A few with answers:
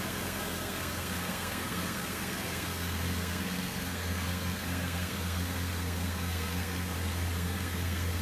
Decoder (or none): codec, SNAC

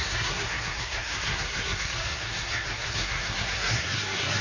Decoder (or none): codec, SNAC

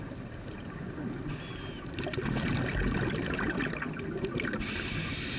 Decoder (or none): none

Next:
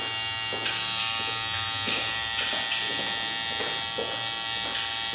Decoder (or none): none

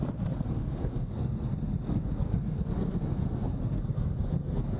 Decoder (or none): codec, SNAC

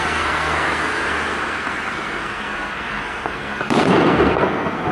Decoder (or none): codec, SNAC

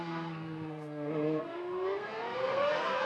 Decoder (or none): codec, SNAC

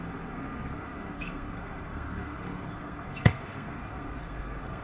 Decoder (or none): codec, SNAC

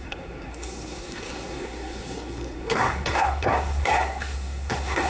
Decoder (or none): codec, SNAC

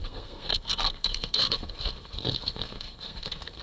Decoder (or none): codec, SNAC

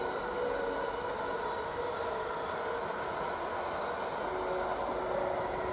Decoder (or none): none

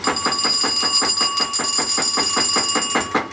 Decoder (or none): none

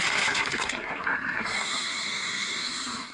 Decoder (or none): codec, SNAC